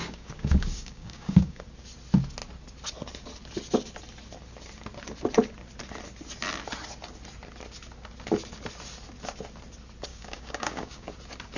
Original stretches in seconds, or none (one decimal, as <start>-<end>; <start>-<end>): 1.6-10.1; 11.1-11.6